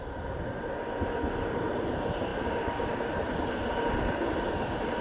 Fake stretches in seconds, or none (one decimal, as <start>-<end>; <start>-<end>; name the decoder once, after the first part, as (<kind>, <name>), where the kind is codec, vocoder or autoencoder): none